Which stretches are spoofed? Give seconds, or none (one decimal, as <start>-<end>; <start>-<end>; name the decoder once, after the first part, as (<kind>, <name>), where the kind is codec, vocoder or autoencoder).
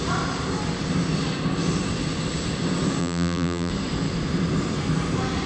3.0-3.7 (vocoder, BigVGAN v2)